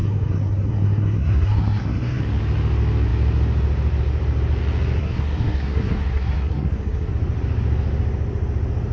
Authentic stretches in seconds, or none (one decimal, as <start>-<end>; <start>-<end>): 2.2-5.0; 7.1-8.9